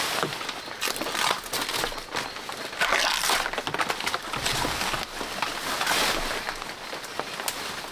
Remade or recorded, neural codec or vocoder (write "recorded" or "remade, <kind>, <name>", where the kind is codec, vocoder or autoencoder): recorded